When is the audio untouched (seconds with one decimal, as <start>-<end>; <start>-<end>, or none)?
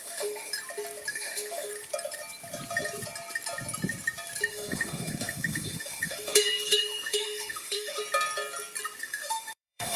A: 0.5-1.1; 1.7-4.5; 8.0-9.0